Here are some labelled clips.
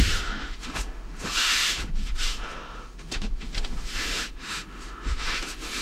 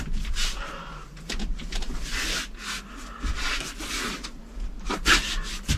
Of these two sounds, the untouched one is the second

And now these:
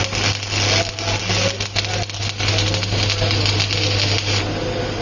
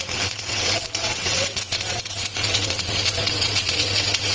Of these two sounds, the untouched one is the first